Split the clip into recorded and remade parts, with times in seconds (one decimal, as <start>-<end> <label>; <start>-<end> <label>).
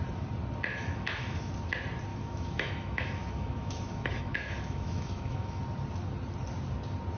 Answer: 0.0-0.7 recorded; 0.7-1.5 remade; 1.5-2.1 recorded; 2.1-5.6 remade; 5.6-7.2 recorded